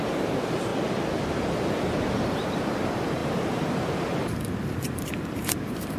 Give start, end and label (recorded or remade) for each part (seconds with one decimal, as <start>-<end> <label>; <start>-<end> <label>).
0.0-0.7 remade; 0.7-2.2 recorded; 2.2-6.0 remade